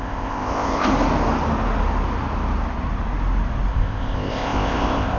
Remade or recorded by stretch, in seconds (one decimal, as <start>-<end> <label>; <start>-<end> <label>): 0.0-0.9 remade; 0.9-3.7 recorded; 3.7-5.2 remade